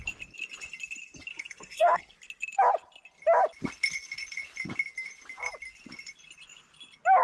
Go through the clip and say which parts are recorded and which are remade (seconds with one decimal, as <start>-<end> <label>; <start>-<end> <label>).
0.0-1.3 recorded; 1.3-2.0 remade; 2.0-7.2 recorded